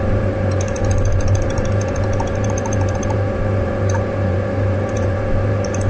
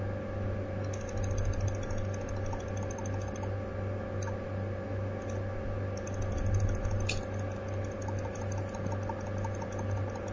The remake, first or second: first